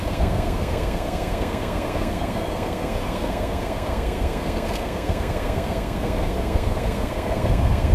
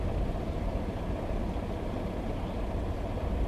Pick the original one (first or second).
second